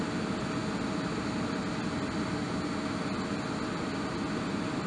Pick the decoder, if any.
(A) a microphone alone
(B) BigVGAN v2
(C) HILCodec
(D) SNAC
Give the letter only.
A